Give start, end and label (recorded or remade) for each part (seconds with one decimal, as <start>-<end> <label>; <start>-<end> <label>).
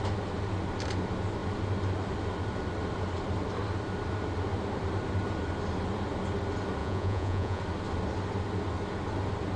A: 0.0-6.8 recorded; 6.8-7.6 remade; 7.6-9.6 recorded